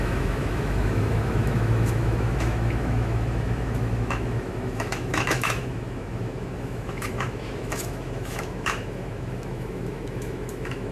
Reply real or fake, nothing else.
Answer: fake